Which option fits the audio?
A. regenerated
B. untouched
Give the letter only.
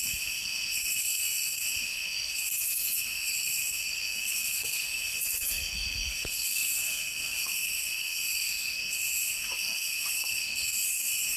A